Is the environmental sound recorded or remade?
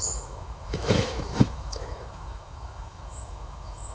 remade